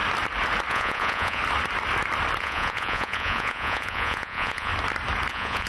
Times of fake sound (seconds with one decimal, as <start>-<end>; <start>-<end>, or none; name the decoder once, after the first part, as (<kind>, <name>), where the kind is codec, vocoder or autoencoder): 0.7-1.4 (vocoder, Vocos); 2.4-4.7; 5.3-5.7